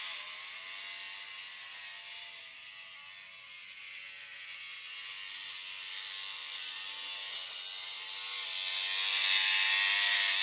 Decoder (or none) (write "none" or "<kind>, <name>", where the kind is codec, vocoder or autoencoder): none